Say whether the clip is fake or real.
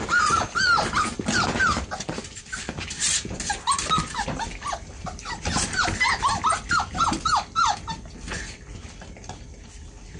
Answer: real